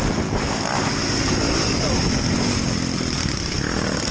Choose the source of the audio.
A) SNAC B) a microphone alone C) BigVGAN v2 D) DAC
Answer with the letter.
B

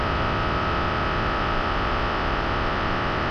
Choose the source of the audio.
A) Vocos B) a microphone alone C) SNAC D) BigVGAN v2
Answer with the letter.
B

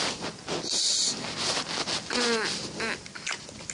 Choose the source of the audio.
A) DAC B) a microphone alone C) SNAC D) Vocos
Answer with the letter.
B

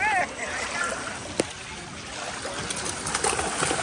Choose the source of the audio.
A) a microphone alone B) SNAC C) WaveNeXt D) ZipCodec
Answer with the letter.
A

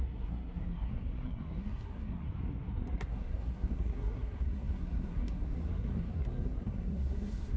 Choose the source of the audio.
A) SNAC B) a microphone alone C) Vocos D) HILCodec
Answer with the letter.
A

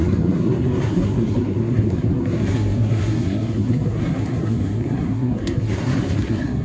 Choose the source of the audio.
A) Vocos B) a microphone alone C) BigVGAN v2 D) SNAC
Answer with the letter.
D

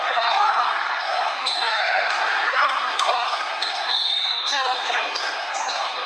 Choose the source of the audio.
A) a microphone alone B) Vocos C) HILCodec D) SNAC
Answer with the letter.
D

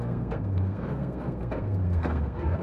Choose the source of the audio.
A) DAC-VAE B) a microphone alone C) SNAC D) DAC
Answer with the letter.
C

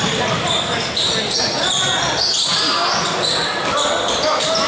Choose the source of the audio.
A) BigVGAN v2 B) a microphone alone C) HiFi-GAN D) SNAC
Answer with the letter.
B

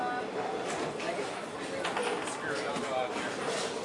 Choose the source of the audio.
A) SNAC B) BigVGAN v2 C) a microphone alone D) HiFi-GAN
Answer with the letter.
C